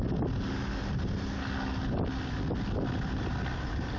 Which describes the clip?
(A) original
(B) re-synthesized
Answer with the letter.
A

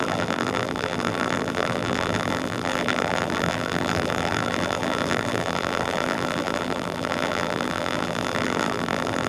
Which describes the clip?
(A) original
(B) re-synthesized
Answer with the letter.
B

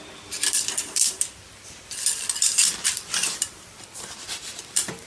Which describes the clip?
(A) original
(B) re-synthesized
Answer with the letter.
B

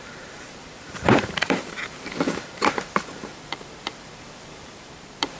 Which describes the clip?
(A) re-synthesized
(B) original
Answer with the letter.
A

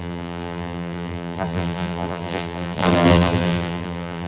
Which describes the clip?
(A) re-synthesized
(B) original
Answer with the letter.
A